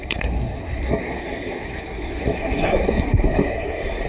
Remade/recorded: remade